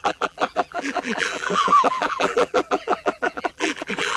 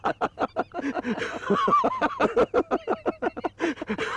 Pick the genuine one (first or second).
second